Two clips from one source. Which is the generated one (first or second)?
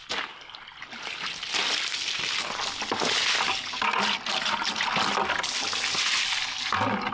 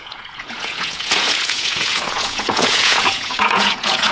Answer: second